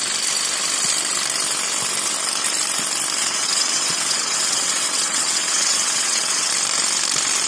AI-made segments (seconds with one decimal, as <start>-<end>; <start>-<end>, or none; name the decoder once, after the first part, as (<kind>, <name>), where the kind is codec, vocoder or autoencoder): 3.2-6.5 (vocoder, WaveNeXt)